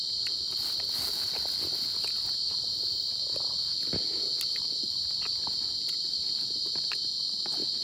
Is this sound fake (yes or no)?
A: no